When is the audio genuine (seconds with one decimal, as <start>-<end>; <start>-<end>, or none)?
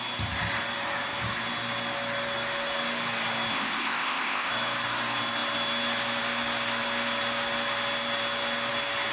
0.0-3.5; 4.5-9.1